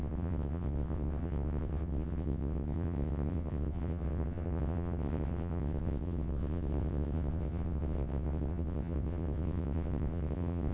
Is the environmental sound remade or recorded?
remade